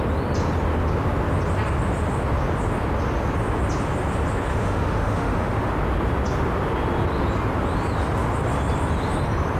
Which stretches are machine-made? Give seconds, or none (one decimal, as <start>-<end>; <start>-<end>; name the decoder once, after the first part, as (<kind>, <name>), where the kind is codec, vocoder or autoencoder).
4.5-5.7 (autoencoder, DAC-VAE)